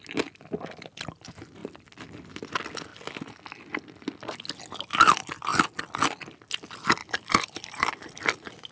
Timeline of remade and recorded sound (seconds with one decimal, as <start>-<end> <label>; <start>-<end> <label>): 0.0-7.0 recorded; 7.0-8.2 remade; 8.2-8.7 recorded